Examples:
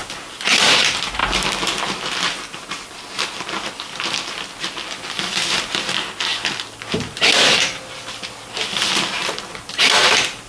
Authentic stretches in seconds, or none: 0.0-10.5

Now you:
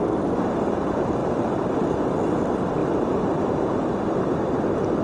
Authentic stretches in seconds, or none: 0.0-1.2; 2.0-5.0

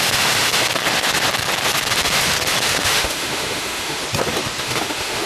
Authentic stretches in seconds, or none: 0.6-2.6; 4.0-4.6

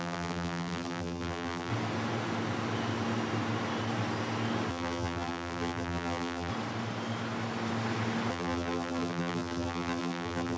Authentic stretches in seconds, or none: 1.7-4.7; 6.5-8.3

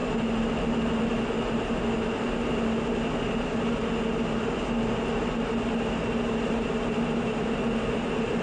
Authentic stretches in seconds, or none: 0.0-8.4

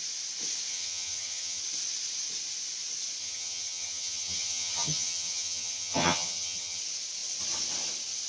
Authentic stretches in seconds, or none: 0.0-0.7; 1.6-3.2; 6.8-8.3